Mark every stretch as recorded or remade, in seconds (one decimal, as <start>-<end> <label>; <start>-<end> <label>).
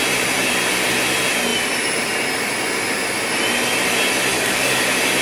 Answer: 0.0-4.3 recorded; 4.3-4.8 remade; 4.8-5.2 recorded